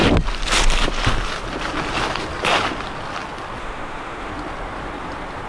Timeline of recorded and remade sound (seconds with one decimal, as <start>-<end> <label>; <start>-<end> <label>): 0.0-3.6 recorded; 3.6-4.3 remade; 4.3-5.5 recorded